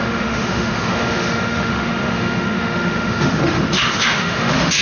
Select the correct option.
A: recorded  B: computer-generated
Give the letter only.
B